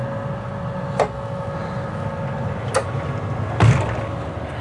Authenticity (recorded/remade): recorded